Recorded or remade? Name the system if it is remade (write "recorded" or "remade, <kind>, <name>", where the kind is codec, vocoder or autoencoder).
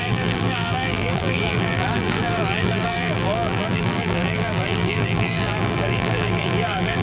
remade, vocoder, BigVGAN v2